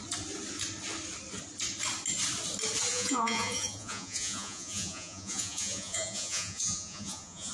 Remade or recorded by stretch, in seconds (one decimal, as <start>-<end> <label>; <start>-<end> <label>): 0.0-2.9 recorded; 2.9-7.5 remade